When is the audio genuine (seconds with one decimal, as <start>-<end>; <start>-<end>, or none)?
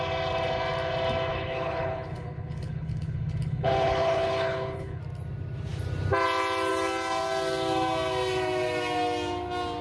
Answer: 0.0-1.3; 5.0-9.8